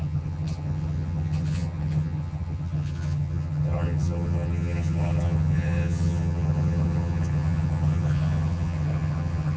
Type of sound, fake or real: fake